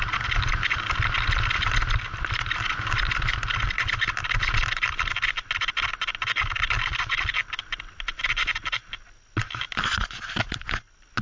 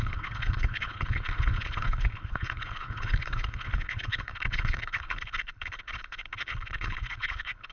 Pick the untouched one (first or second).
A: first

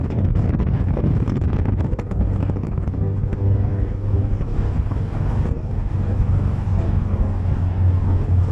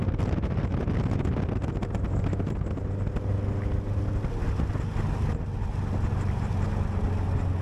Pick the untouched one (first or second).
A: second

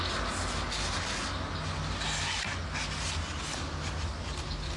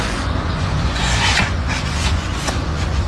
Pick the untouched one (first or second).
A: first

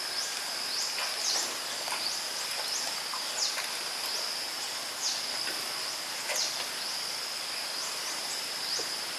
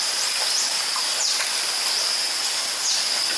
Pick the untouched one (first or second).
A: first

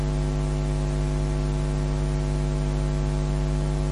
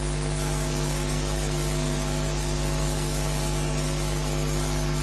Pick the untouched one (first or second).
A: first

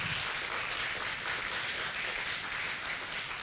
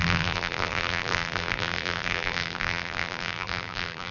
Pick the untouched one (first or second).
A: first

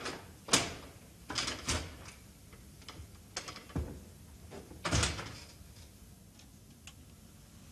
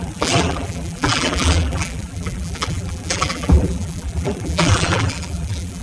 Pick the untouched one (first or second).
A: first